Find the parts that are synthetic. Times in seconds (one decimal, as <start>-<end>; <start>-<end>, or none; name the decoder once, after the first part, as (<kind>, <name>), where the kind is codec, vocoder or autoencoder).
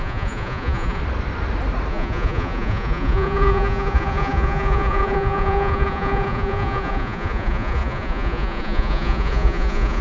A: 0.0-1.0 (vocoder, Vocos); 1.9-10.0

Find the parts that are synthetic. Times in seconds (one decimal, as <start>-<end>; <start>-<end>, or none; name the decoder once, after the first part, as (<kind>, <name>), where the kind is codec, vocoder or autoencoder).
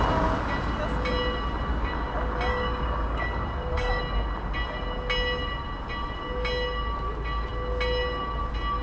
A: 2.5-4.0 (codec, DAC)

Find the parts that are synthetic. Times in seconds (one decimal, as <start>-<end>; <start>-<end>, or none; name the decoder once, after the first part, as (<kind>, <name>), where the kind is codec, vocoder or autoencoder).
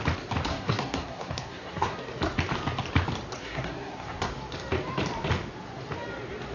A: 0.5-2.0 (codec, SNAC); 3.4-4.3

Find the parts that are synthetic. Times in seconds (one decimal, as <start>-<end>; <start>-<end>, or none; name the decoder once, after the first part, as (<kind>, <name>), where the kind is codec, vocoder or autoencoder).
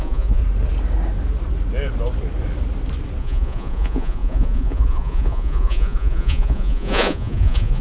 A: 0.0-0.4 (vocoder, Vocos); 3.2-7.8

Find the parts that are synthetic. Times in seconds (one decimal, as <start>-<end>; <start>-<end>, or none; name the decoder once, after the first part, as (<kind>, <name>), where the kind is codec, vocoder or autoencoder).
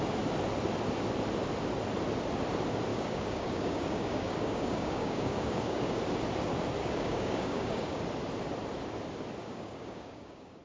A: 2.9-6.0 (codec, DAC); 6.8-8.0; 9.4-10.6